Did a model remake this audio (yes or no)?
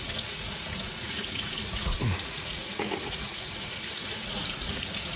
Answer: yes